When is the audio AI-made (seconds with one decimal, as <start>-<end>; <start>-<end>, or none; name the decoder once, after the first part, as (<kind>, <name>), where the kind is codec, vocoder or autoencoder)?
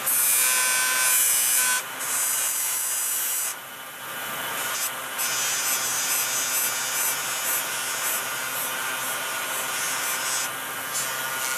5.9-6.5 (vocoder, BigVGAN v2)